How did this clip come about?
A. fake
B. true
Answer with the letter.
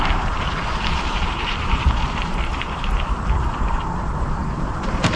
A